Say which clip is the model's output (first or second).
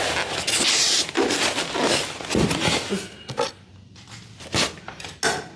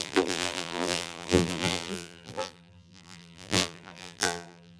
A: second